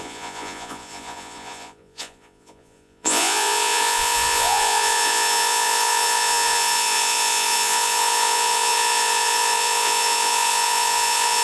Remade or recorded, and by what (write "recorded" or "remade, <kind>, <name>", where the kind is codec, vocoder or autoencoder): remade, vocoder, Vocos